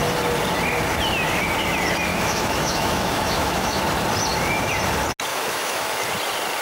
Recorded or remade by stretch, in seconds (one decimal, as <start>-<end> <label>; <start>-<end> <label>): 0.0-2.1 recorded; 2.1-3.8 remade; 3.8-5.3 recorded; 5.3-6.0 remade; 6.0-6.6 recorded